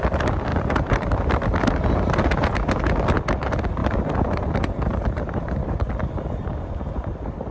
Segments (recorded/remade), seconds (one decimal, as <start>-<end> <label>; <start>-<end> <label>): 0.0-0.5 recorded; 0.5-1.2 remade; 1.2-3.8 recorded; 3.8-5.9 remade; 5.9-6.4 recorded; 6.4-7.1 remade; 7.1-7.5 recorded